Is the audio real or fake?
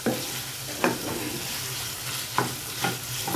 real